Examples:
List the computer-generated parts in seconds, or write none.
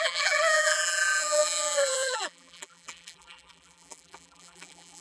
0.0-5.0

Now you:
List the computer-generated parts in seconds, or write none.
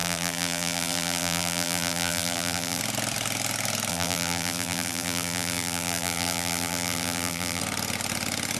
0.0-2.8; 3.9-7.6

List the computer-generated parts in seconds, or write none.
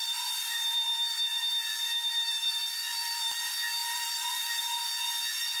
0.0-3.4; 3.8-4.8